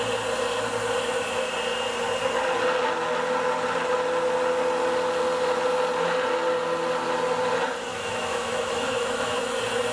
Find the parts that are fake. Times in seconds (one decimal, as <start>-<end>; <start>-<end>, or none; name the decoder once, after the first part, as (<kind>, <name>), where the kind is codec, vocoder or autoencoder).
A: 7.9-9.4 (autoencoder, DAC-VAE)